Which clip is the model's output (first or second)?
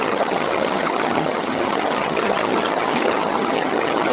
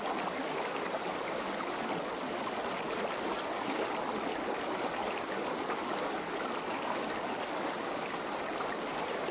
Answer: first